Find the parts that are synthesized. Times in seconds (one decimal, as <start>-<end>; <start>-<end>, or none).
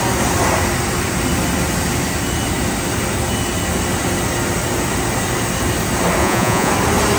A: 6.2-6.7